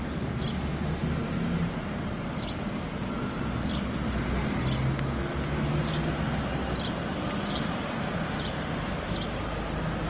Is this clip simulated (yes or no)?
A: no